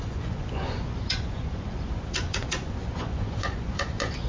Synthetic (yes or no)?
yes